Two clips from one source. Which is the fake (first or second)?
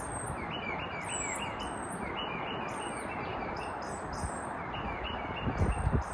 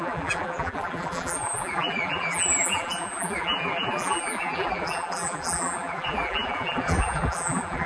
second